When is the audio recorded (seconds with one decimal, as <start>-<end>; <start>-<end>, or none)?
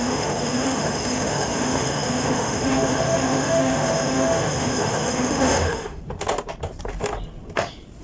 6.0-8.0